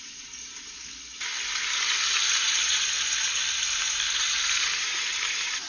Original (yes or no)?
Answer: no